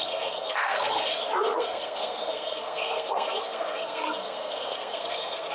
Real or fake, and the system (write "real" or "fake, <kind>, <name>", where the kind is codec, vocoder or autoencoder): fake, codec, SNAC